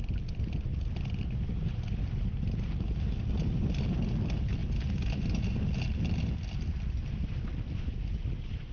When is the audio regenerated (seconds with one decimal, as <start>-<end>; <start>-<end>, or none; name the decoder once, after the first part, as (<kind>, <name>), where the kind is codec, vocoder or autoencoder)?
none